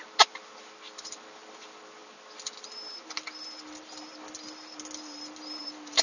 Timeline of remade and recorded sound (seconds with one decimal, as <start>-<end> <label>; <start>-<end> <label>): 0.0-6.0 recorded